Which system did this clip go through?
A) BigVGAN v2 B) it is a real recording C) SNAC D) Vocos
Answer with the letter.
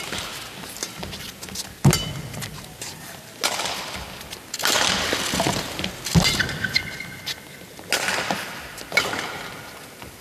B